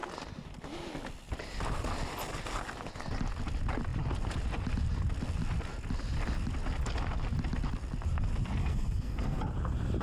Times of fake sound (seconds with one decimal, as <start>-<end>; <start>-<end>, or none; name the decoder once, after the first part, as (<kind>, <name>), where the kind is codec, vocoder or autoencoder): 8.6-9.4 (codec, SNAC)